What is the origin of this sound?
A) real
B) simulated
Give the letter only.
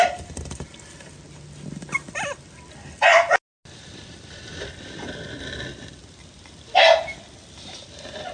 A